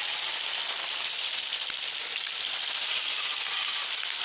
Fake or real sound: real